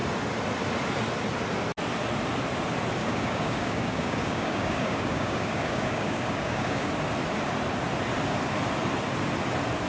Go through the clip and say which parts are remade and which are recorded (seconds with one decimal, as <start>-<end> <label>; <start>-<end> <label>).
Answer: 0.0-3.0 recorded; 3.0-6.9 remade; 6.9-9.9 recorded